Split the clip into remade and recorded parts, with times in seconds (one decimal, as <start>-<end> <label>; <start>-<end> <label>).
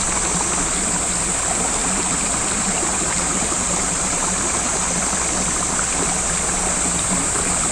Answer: 0.0-1.8 recorded; 1.8-5.0 remade; 5.0-7.7 recorded